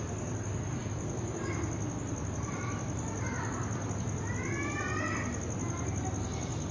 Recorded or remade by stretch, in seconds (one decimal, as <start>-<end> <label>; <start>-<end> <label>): 0.0-6.7 recorded